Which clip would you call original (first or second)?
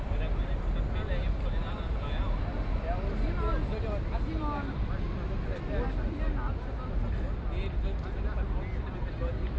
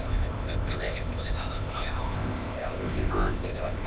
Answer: first